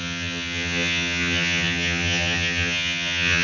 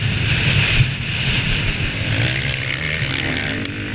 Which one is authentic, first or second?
second